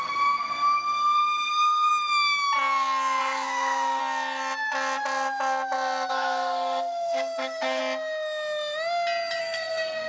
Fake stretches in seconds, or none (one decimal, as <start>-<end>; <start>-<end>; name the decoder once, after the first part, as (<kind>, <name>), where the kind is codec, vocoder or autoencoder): 0.0-1.9 (codec, SNAC); 3.2-4.0; 6.1-7.8; 9.4-10.1